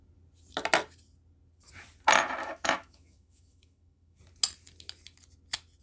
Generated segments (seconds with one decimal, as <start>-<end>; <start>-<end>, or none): 2.4-4.2